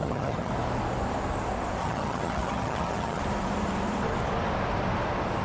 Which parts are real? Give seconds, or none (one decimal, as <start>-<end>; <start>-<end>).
0.5-1.8; 3.2-5.4

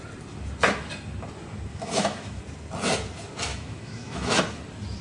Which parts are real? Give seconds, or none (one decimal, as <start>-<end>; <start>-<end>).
0.0-1.7; 2.4-3.5; 4.4-5.0

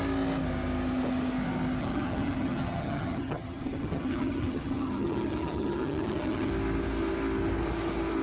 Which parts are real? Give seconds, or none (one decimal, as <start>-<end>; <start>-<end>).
0.0-1.8; 6.5-8.2